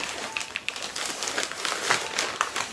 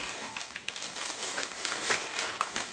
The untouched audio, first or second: first